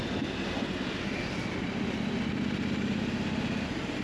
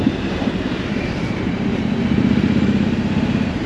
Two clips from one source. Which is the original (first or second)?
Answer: first